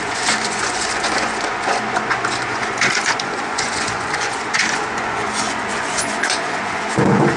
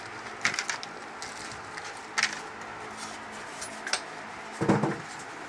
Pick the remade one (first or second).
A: first